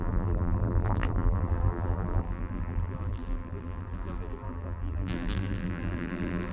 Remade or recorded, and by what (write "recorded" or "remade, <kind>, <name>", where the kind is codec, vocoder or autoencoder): remade, vocoder, BigVGAN v2